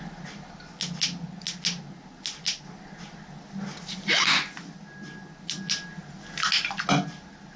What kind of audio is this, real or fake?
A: real